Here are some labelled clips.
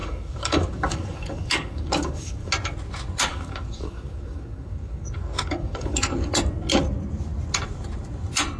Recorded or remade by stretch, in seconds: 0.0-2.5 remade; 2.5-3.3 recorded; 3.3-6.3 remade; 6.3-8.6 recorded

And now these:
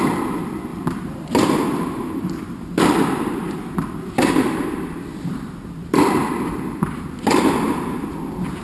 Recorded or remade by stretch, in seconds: 0.0-8.6 remade

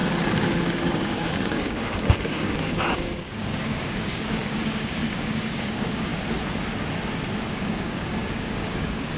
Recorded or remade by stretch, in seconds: 0.0-0.7 recorded; 0.7-6.1 remade; 6.1-7.5 recorded; 7.5-9.2 remade

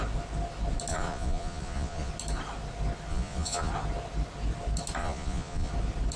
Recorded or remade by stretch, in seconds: 0.0-0.9 recorded; 0.9-2.1 remade; 2.1-3.1 recorded; 3.1-3.7 remade; 3.7-5.0 recorded; 5.0-5.7 remade; 5.7-6.2 recorded

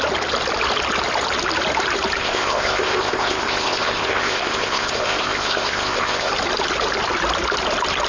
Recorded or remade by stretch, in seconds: 0.0-2.2 recorded; 2.2-6.3 remade; 6.3-8.1 recorded

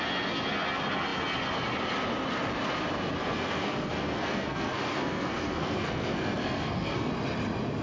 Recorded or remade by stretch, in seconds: 0.0-3.2 recorded; 3.2-7.1 remade; 7.1-7.8 recorded

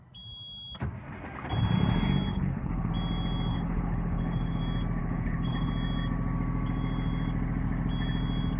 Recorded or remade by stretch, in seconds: 0.0-2.3 recorded; 2.3-2.9 remade; 2.9-3.5 recorded; 3.5-4.6 remade; 4.6-5.0 recorded; 5.0-5.7 remade; 5.7-8.6 recorded